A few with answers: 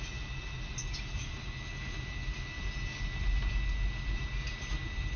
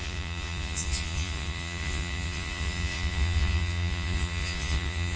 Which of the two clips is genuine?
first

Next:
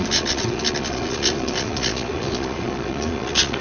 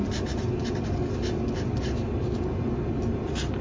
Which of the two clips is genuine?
second